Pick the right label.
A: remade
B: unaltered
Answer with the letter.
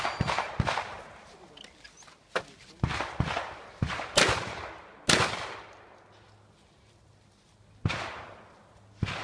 B